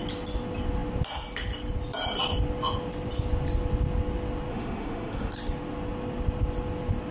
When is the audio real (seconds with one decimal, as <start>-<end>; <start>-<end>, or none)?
0.0-4.5; 5.3-7.1